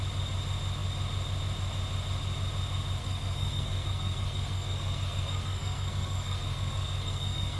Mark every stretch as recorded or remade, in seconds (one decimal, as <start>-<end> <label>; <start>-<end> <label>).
0.0-3.0 recorded; 3.0-7.6 remade